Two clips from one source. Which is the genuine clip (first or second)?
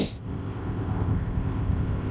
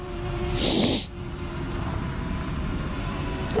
second